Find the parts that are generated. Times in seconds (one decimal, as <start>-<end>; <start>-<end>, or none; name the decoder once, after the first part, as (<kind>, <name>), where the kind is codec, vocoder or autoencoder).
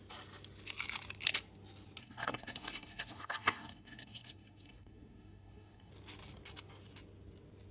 2.0-5.9 (codec, SNAC)